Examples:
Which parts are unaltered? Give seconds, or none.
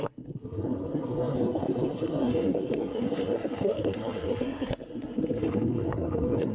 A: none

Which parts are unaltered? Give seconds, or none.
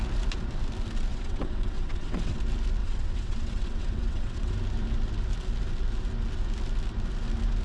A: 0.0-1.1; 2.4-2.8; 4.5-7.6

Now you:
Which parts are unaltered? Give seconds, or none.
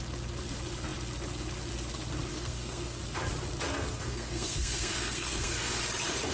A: 0.0-2.3; 3.0-3.7; 5.8-6.3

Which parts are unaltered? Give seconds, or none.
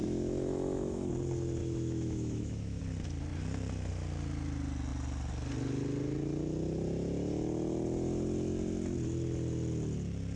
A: 1.1-1.6; 2.8-10.4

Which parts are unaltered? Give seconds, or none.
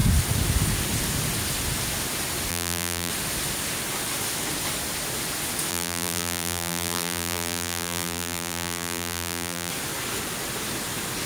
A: 0.0-2.5; 3.1-5.7; 9.7-11.3